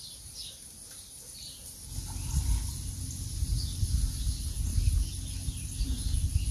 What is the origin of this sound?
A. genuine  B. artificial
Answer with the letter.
A